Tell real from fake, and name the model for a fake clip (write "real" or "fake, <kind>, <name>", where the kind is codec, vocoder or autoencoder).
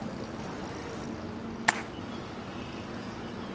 real